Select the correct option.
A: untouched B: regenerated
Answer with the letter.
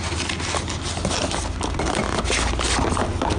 A